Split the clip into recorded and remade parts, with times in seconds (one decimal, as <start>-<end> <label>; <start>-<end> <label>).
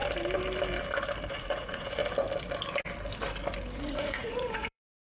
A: 0.0-1.3 recorded; 1.3-2.0 remade; 2.0-3.8 recorded; 3.8-5.1 remade